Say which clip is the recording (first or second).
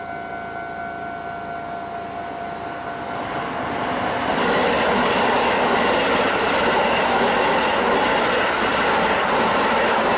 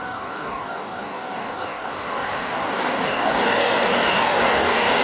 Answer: first